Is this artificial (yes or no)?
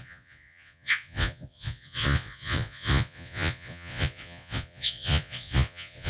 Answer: yes